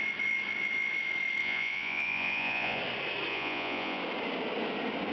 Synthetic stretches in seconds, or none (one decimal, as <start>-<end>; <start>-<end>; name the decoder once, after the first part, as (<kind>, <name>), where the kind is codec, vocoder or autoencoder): 1.4-2.8 (vocoder, Vocos); 3.3-4.0